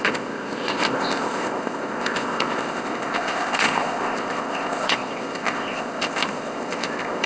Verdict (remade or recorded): remade